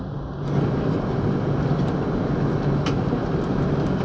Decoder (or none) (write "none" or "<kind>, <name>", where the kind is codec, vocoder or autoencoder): none